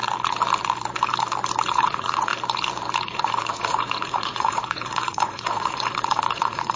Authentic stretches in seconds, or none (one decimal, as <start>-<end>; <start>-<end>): 0.0-1.7; 2.3-3.0

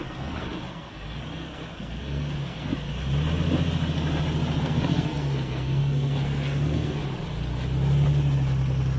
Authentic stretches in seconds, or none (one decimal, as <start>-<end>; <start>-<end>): 2.7-4.6; 7.0-9.0

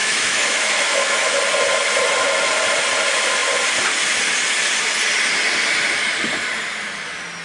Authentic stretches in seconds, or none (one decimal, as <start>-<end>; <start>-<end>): 1.4-7.4

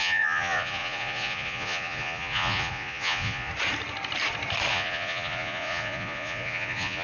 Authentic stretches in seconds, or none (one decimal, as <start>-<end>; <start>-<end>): 3.5-4.7

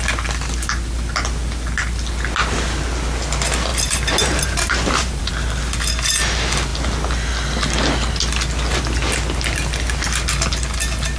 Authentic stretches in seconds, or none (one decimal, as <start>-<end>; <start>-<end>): 0.0-3.7; 5.3-11.2

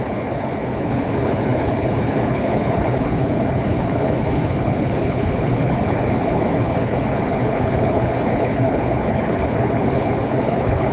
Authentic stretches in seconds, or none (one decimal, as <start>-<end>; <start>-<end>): none